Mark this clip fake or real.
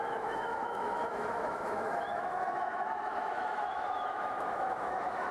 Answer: fake